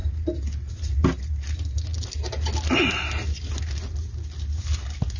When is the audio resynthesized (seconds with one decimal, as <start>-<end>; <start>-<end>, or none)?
none